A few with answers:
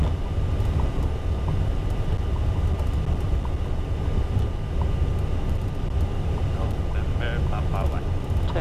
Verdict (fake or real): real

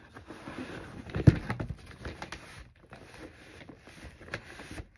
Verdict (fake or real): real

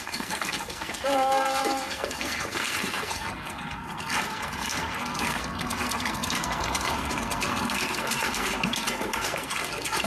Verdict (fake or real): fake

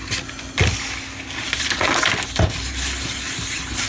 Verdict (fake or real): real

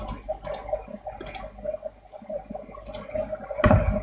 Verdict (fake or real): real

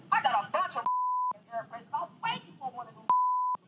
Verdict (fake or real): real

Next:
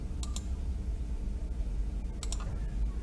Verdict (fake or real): real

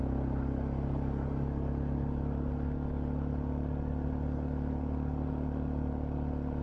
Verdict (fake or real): real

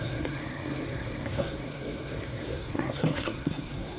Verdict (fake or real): fake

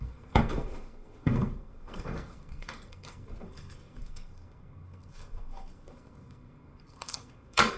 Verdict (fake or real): fake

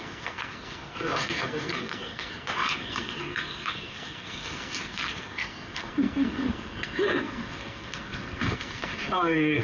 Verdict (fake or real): fake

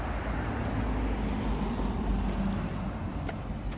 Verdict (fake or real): real